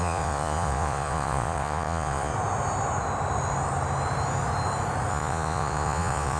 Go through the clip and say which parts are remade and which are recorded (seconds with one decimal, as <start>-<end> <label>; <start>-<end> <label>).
0.0-2.3 remade; 2.3-5.1 recorded; 5.1-6.4 remade